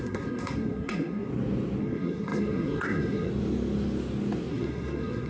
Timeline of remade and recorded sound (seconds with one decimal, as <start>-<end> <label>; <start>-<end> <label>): 0.0-1.3 remade; 1.3-1.8 recorded; 1.8-3.3 remade; 3.3-4.5 recorded; 4.5-5.3 remade